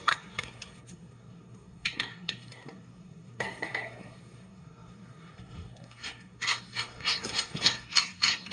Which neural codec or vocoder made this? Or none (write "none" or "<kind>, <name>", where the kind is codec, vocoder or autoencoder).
codec, SNAC